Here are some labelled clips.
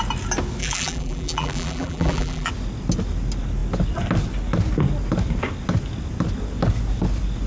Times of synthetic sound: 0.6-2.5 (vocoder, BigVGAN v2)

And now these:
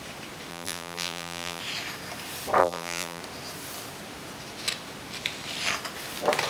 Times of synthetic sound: 0.5-1.6 (vocoder, BigVGAN v2); 2.6-3.2

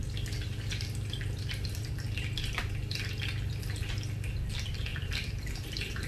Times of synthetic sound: 0.0-2.6 (vocoder, BigVGAN v2); 4.9-5.5